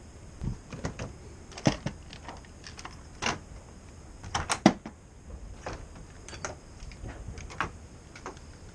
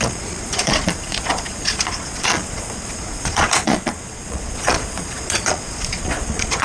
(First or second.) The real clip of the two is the first